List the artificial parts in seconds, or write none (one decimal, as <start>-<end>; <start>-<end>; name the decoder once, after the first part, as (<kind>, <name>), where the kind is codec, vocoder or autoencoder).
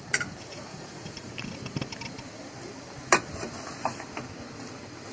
0.7-1.3 (vocoder, Vocos)